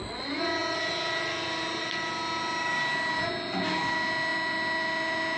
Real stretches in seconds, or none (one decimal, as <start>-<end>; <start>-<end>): 0.0-5.4